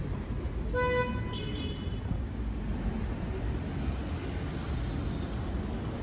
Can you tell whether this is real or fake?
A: real